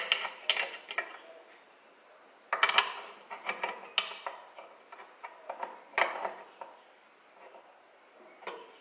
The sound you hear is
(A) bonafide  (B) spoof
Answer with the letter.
A